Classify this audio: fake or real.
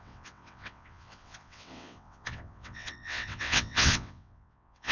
fake